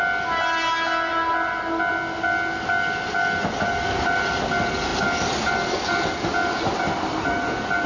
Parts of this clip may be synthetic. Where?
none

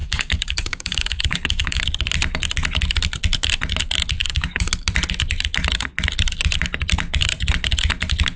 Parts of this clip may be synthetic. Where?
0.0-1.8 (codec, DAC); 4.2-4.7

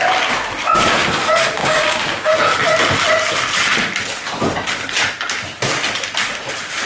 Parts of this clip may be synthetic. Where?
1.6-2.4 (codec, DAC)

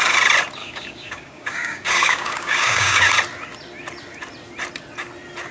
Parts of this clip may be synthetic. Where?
0.6-3.1 (codec, DAC)